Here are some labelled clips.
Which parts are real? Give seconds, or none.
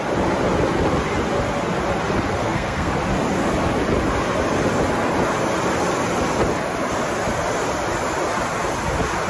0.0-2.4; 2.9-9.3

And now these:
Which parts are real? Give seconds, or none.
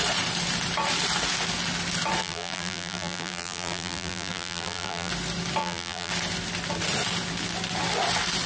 0.0-2.2; 5.1-5.6; 6.1-8.5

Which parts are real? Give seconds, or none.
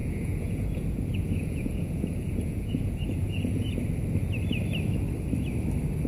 3.7-6.1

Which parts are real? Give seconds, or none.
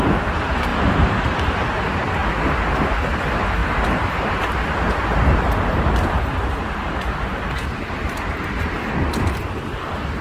0.0-0.7; 1.7-3.6; 8.4-10.2